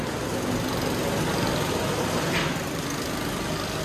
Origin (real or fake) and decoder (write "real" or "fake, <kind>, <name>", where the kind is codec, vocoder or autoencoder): real